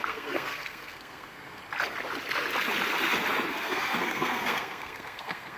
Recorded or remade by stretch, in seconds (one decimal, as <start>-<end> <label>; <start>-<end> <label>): 0.0-1.6 remade; 1.6-3.5 recorded; 3.5-5.6 remade